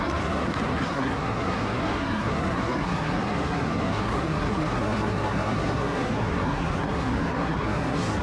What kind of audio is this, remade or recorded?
remade